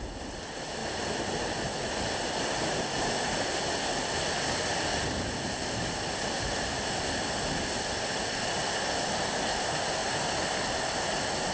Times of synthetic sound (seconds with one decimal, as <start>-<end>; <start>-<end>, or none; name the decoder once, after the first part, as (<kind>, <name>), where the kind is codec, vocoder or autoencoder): 0.0-0.8 (vocoder, BigVGAN v2); 1.8-10.0; 10.7-11.5